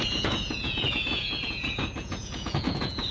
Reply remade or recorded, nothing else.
remade